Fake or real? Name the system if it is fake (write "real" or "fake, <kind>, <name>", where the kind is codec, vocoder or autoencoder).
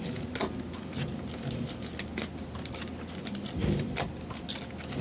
real